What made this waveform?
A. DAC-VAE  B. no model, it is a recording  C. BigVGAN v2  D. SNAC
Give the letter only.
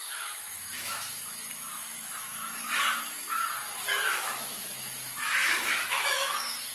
A